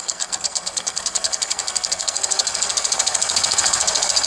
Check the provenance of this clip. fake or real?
fake